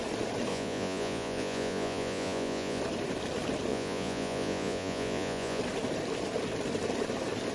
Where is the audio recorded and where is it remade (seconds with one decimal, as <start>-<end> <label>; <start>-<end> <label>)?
0.0-0.5 recorded; 0.5-2.8 remade; 2.8-3.7 recorded; 3.7-5.6 remade; 5.6-7.5 recorded